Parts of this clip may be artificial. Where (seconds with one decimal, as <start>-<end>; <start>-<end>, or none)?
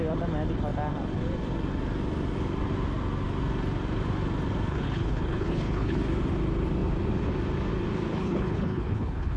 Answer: 4.7-6.0; 8.1-9.4